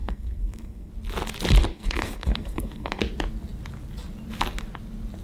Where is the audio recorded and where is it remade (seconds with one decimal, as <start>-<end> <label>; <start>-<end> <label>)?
0.0-0.9 remade; 0.9-1.7 recorded; 1.7-3.0 remade; 3.0-5.2 recorded